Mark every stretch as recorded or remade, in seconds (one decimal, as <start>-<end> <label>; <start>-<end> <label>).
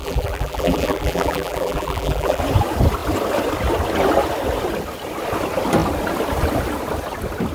0.0-2.4 remade; 2.4-7.5 recorded